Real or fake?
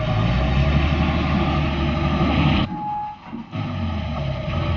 real